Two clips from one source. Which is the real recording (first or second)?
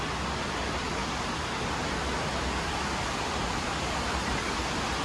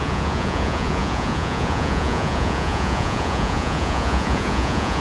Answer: first